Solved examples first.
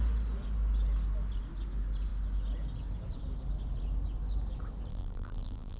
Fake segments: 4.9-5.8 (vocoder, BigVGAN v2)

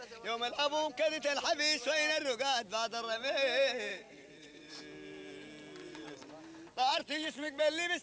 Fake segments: 3.9-4.8 (vocoder, WaveNeXt); 5.8-6.3; 6.9-7.6

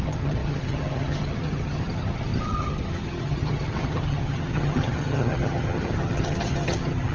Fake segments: 0.0-7.1 (vocoder, HiFi-GAN)

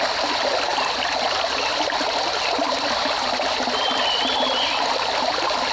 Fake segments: none

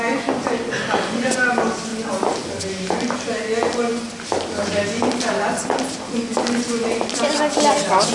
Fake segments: none

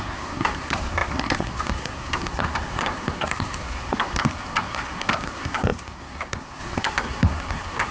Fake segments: 0.0-7.9 (codec, SNAC)

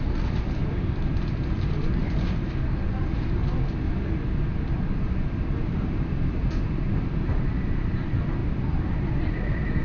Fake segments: 0.0-3.4 (vocoder, BigVGAN v2); 5.0-8.4; 9.3-9.8